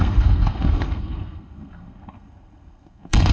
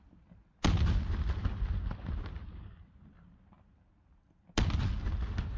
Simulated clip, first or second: first